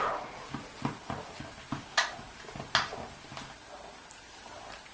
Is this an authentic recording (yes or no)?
yes